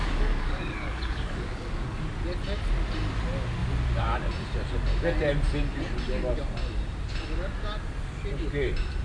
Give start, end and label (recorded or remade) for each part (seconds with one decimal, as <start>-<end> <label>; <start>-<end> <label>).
0.0-2.0 remade; 2.0-9.0 recorded